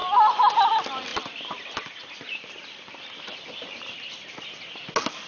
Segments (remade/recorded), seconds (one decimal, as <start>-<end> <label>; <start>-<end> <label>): 0.0-5.3 recorded